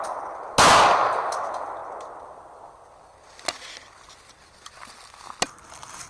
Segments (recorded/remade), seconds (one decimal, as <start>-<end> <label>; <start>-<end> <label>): 0.0-6.1 recorded